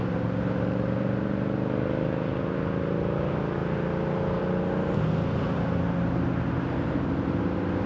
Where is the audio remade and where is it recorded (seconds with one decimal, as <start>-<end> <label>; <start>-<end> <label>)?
0.0-7.9 recorded